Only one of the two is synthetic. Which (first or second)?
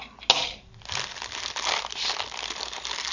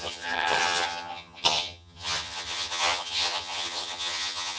second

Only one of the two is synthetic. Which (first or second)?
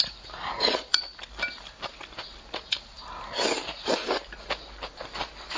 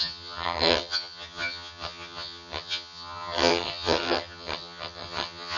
second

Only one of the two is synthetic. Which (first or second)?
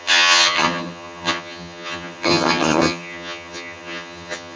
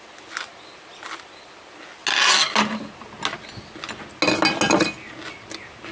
first